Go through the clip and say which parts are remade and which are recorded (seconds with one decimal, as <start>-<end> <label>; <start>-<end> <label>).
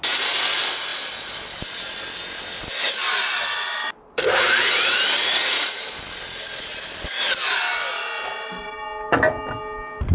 0.0-5.4 recorded; 5.4-6.0 remade; 6.0-10.1 recorded